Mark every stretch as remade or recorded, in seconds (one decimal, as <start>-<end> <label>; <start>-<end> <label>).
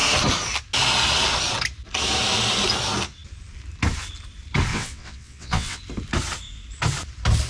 0.0-4.7 recorded; 4.7-5.8 remade; 5.8-7.5 recorded